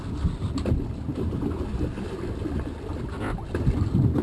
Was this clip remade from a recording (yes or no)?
no